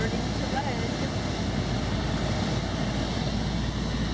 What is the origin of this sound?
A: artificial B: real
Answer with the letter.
B